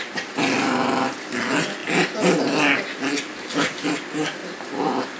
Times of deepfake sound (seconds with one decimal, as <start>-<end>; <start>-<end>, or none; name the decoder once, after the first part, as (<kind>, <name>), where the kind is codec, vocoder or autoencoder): none